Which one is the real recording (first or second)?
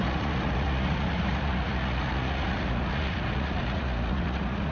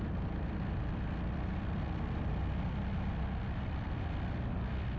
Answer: second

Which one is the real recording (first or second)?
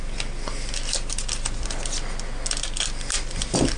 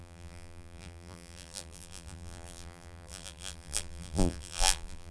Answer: first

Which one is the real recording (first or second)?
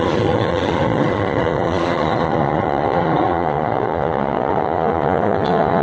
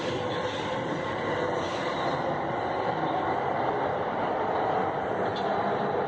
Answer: second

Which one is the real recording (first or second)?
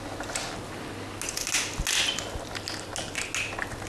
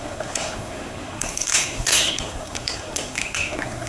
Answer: first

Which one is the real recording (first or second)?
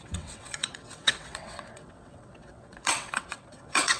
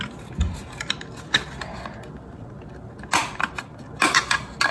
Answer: second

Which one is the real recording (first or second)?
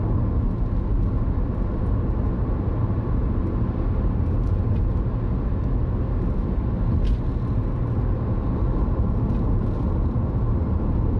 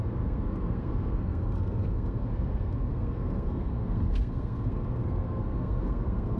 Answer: first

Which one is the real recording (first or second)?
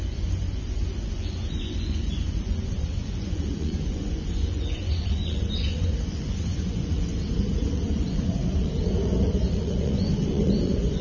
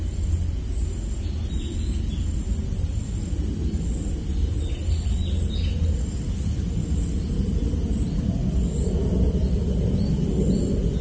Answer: second